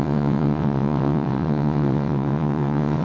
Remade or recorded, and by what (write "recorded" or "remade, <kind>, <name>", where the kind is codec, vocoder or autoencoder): remade, vocoder, WaveNeXt